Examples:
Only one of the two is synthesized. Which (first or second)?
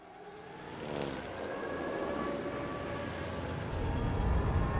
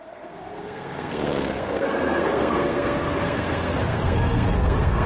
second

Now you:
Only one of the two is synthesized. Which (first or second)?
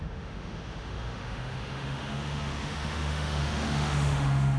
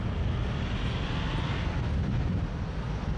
first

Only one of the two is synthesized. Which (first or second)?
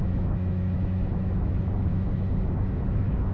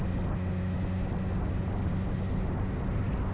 first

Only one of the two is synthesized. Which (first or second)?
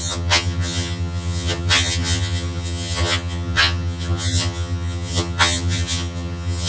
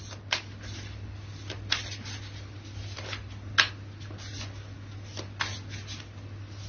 first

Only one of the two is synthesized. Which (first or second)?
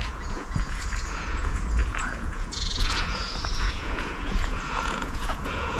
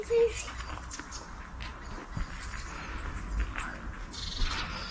first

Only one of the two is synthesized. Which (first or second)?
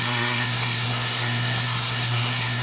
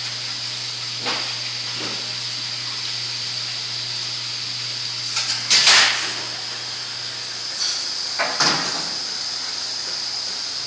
first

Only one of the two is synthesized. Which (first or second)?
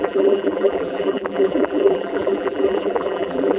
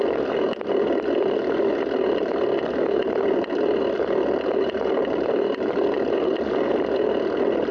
first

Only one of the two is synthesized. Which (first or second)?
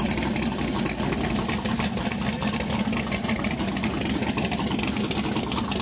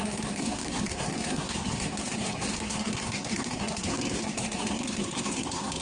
second